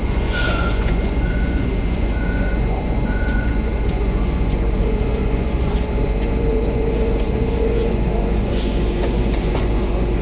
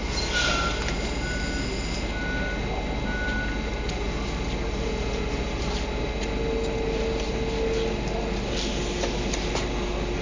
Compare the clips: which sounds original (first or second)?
second